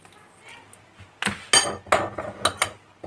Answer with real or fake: real